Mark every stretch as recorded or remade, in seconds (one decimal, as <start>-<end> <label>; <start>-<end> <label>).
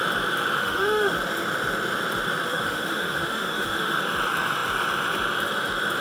0.0-0.6 recorded; 0.6-1.1 remade; 1.1-2.5 recorded; 2.5-4.0 remade; 4.0-6.0 recorded